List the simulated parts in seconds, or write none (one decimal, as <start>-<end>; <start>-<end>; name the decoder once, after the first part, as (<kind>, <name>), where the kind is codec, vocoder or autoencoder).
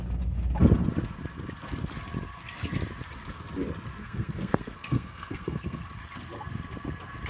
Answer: 4.0-5.8 (codec, SNAC)